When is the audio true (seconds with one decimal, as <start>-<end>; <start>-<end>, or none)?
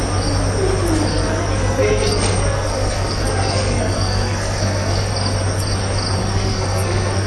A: 0.0-1.1; 5.1-6.2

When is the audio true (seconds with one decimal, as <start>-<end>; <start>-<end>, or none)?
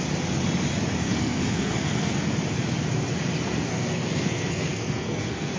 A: 0.0-1.0; 2.3-3.7